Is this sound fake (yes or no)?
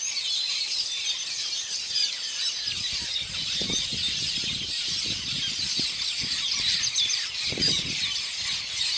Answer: no